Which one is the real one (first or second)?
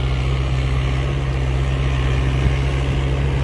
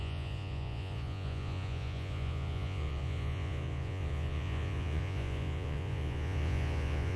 first